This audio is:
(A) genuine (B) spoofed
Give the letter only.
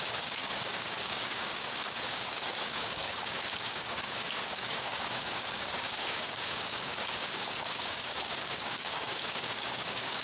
B